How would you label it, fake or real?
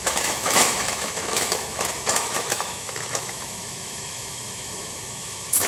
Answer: fake